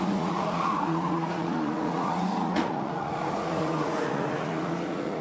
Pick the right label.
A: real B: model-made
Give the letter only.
B